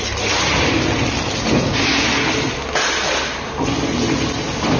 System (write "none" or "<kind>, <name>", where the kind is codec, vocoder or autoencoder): none